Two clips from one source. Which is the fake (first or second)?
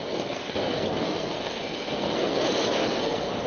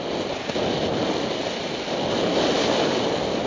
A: first